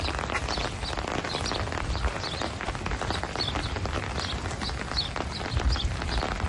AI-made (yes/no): no